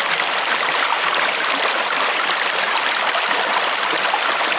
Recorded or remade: recorded